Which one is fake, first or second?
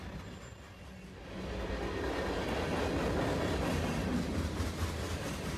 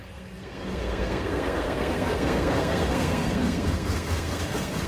second